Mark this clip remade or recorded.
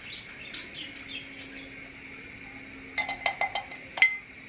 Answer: recorded